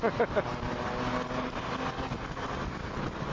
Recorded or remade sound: recorded